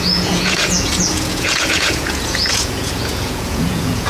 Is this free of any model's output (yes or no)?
no